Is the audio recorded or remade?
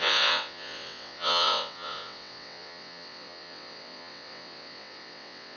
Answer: remade